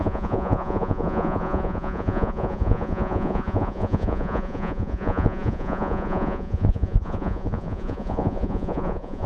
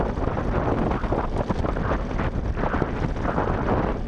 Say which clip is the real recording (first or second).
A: second